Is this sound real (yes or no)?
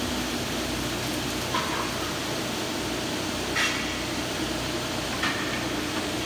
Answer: yes